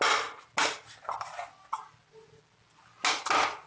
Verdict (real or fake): real